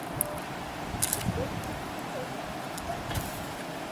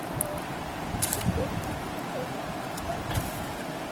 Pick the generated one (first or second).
second